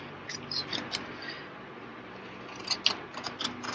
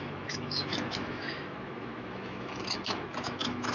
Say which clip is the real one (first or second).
first